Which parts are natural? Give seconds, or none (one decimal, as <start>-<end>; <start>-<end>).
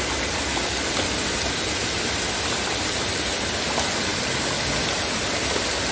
0.0-5.9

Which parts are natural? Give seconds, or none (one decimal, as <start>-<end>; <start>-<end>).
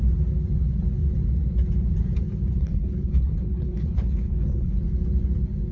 0.0-2.6; 4.8-5.7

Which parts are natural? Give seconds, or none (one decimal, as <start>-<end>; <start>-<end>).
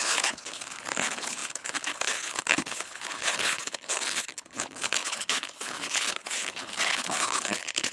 none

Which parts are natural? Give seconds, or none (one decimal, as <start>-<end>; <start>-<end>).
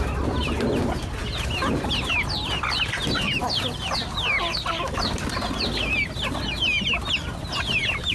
0.0-8.1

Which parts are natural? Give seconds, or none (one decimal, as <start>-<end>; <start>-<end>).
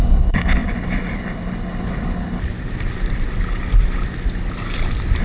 2.4-5.2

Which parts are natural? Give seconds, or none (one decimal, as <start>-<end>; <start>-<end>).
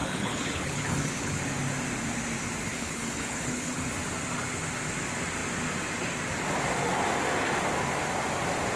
1.4-2.7; 3.9-8.8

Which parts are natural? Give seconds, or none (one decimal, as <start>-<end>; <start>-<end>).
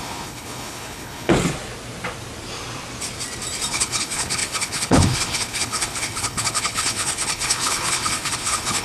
1.3-3.7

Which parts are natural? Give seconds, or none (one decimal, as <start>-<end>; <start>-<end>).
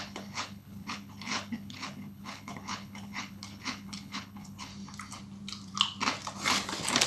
4.7-7.1